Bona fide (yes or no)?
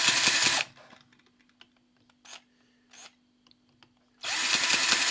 yes